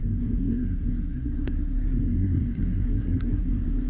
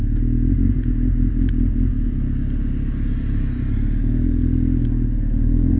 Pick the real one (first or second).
second